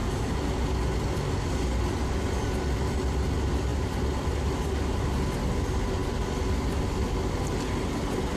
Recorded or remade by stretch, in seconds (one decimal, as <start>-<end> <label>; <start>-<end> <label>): 0.0-8.4 recorded